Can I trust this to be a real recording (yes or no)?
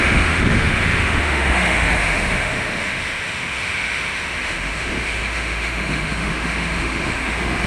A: no